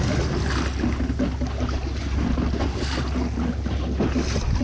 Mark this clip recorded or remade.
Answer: recorded